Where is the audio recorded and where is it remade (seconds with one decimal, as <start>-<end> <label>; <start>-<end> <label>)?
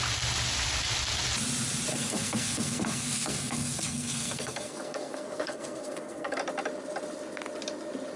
0.0-1.9 recorded; 1.9-6.4 remade; 6.4-8.2 recorded